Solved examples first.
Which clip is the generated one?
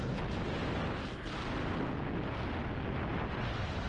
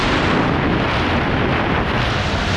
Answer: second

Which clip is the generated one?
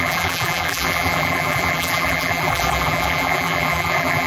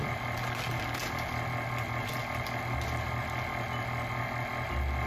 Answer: first